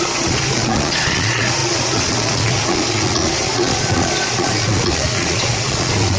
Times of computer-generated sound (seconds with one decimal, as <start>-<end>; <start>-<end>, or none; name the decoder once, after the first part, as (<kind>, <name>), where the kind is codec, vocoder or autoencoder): 0.0-6.2 (vocoder, Vocos)